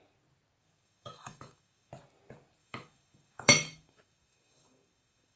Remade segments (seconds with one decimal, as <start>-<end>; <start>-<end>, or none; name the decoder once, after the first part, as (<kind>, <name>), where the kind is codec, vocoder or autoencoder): 0.6-1.9 (autoencoder, DAC-VAE); 2.6-5.4